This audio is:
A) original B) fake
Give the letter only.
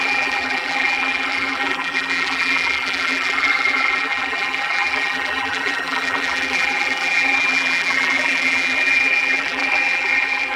B